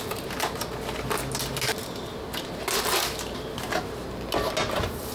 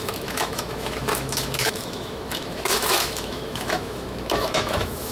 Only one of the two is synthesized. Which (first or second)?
second